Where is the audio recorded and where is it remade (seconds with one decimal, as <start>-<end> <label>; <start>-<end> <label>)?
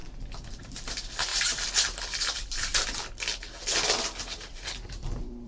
0.0-1.3 remade; 1.3-2.0 recorded; 2.0-2.7 remade; 2.7-4.5 recorded; 4.5-5.5 remade